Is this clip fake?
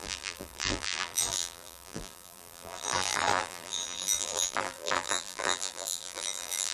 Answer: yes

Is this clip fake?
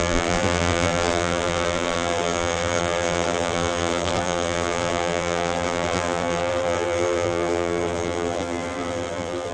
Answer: yes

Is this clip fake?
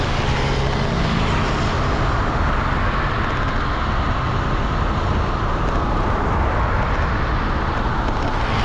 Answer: no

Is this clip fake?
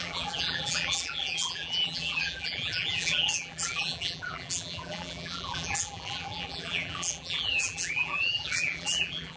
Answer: yes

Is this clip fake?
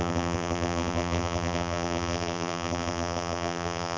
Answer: yes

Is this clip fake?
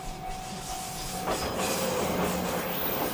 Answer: no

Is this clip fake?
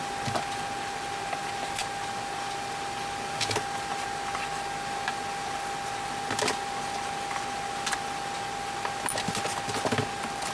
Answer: no